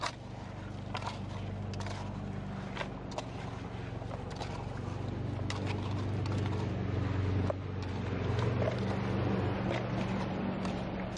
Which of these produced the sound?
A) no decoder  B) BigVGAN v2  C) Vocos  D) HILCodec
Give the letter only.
A